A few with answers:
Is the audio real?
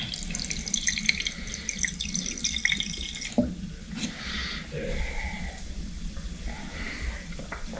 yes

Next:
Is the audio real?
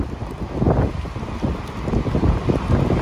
yes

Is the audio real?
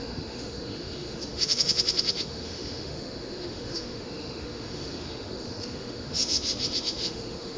no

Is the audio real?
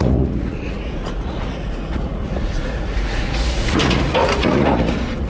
no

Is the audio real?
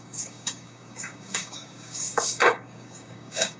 no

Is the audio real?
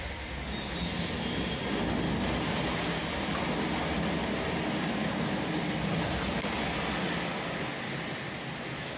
yes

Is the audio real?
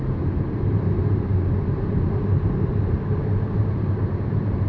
no